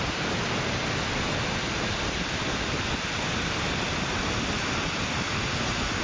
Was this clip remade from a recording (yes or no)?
no